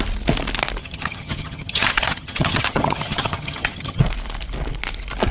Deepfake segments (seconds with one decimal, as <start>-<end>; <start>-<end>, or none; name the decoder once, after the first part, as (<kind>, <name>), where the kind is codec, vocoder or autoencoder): 0.8-4.0 (vocoder, HiFi-GAN)